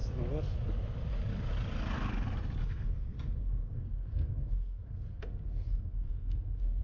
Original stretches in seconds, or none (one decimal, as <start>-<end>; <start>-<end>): 0.0-2.6